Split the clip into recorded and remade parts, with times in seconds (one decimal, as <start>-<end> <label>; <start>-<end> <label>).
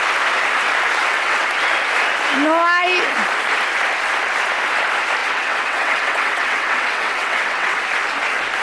0.0-1.0 recorded; 1.0-1.5 remade; 1.5-5.2 recorded; 5.2-7.8 remade; 7.8-8.6 recorded